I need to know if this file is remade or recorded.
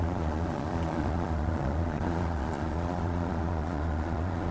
remade